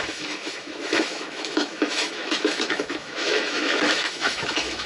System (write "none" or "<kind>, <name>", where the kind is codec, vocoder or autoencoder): autoencoder, DAC-VAE